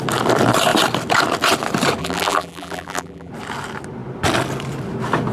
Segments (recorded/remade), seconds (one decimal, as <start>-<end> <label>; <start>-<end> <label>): 0.0-2.0 recorded; 2.0-3.3 remade; 3.3-5.3 recorded